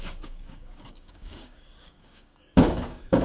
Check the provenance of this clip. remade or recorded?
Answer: remade